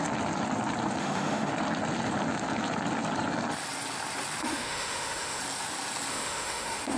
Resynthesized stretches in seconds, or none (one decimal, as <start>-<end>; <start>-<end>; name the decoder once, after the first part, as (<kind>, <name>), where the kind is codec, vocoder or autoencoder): 1.0-1.5 (autoencoder, DAC-VAE); 4.4-5.4; 6.1-7.0